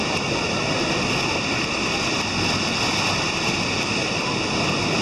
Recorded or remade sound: recorded